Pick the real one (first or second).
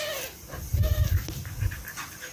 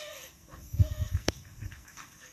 first